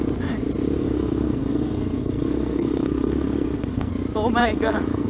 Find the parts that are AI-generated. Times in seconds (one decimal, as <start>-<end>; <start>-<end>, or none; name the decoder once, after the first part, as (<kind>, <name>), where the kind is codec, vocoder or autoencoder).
0.8-3.9 (codec, SNAC); 4.4-5.1